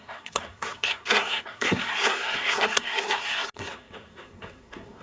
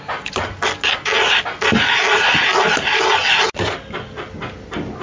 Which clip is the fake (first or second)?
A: first